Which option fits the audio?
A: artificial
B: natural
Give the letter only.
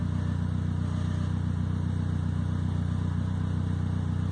B